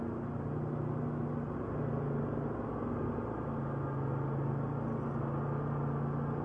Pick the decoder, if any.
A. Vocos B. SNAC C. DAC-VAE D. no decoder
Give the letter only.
D